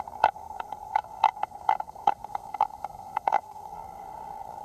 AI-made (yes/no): yes